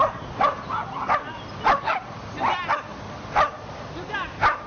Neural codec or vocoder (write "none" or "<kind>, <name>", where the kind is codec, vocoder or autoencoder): none